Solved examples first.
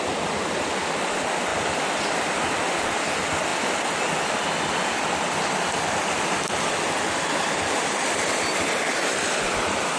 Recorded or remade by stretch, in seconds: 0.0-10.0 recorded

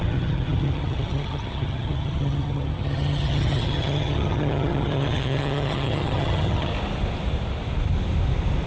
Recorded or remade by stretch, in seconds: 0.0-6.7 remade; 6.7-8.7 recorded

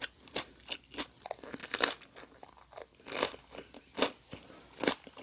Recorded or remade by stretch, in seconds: 0.0-5.2 recorded